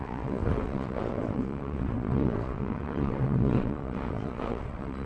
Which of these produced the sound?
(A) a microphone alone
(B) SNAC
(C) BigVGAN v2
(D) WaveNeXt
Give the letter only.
D